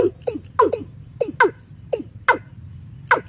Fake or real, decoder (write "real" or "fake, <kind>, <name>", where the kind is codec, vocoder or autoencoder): real